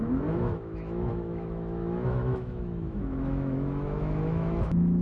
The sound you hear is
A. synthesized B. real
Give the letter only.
A